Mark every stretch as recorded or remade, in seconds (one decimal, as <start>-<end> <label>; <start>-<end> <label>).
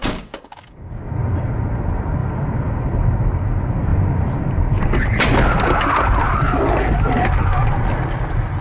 0.0-1.0 remade; 1.0-8.6 recorded